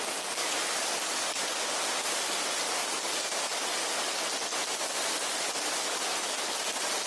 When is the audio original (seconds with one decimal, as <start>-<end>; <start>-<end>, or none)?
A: 0.0-0.4; 1.5-7.1